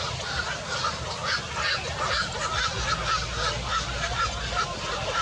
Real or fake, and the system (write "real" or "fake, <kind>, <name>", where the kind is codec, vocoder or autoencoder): real